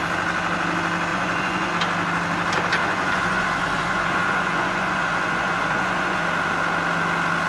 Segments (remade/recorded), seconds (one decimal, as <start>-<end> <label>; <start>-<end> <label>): 0.0-1.1 recorded; 1.1-1.7 remade; 1.7-2.8 recorded; 2.8-6.2 remade; 6.2-7.5 recorded